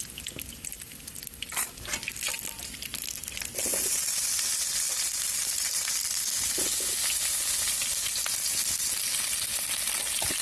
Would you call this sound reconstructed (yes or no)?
no